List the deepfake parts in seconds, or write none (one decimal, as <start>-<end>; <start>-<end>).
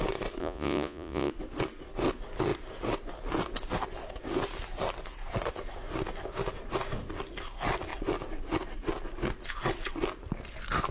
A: 0.4-1.3